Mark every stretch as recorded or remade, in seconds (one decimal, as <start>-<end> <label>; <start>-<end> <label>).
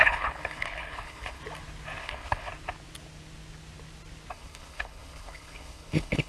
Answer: 0.0-1.4 remade; 1.4-2.0 recorded; 2.0-2.5 remade; 2.5-4.3 recorded; 4.3-6.3 remade